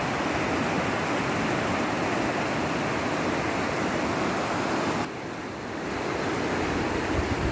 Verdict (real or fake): real